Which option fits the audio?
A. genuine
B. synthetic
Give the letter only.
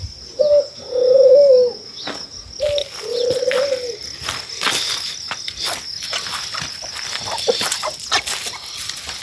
A